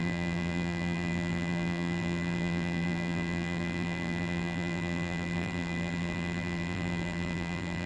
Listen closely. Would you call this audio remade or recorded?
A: remade